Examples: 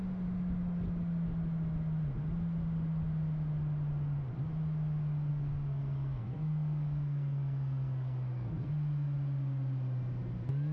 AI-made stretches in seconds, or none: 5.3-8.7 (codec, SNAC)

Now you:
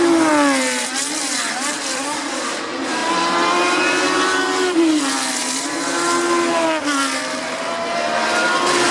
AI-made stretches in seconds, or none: none